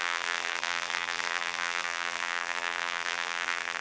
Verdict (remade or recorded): remade